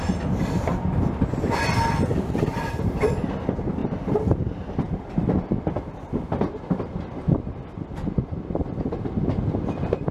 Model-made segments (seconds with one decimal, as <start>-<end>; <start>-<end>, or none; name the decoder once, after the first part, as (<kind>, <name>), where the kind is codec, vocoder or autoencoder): 2.1-2.7 (vocoder, BigVGAN v2); 3.8-5.2

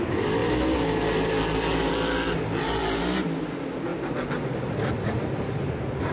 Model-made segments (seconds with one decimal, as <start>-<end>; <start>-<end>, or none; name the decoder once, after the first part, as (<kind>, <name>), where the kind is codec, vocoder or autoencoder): 3.9-4.9 (vocoder, BigVGAN v2)

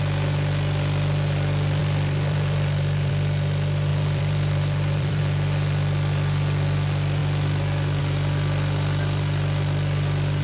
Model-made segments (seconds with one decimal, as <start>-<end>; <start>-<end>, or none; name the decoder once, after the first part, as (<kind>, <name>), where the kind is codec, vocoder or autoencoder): 1.8-3.1 (vocoder, BigVGAN v2); 3.9-5.2